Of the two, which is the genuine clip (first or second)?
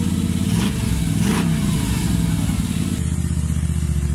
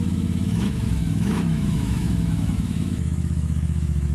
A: first